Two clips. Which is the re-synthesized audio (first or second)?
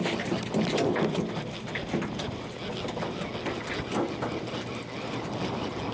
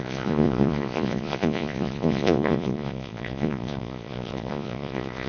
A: second